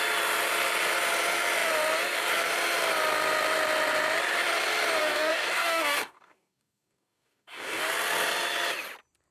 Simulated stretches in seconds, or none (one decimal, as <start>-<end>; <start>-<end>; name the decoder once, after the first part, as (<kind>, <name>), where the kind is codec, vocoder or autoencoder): 5.0-7.8 (codec, DAC)